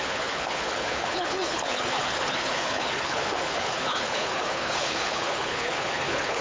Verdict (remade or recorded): remade